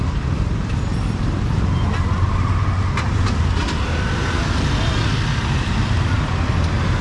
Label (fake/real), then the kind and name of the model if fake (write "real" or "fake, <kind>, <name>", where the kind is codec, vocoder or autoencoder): real